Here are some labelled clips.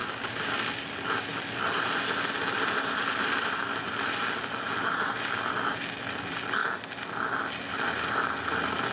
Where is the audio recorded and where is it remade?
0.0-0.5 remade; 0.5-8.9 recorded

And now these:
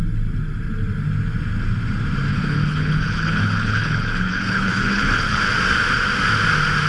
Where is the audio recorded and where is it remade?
0.0-2.3 recorded; 2.3-5.4 remade; 5.4-6.9 recorded